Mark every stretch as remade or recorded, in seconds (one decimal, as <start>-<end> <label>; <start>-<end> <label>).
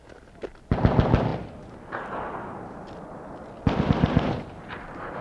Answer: 0.0-5.2 recorded